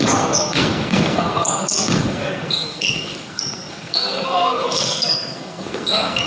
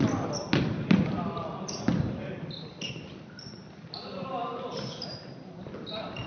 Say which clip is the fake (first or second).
first